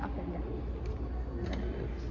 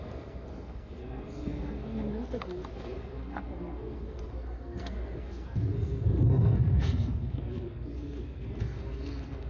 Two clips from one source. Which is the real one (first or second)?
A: first